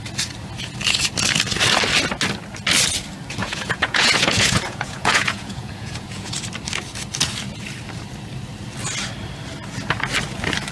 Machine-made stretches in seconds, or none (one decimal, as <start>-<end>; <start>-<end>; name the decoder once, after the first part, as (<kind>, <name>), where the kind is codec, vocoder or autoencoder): 3.4-6.3 (vocoder, Vocos)